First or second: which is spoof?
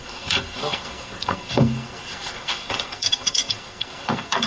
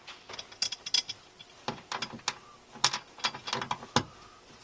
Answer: first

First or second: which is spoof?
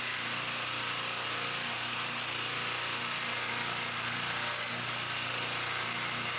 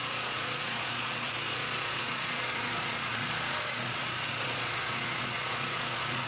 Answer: second